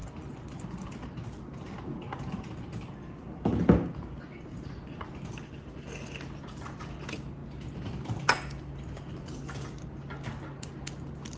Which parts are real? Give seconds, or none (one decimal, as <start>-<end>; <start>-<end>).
0.0-11.4